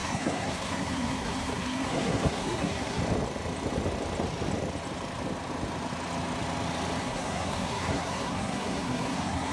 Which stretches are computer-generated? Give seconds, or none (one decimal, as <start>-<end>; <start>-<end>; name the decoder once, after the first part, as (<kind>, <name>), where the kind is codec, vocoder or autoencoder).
0.0-3.0 (codec, SNAC); 7.0-9.5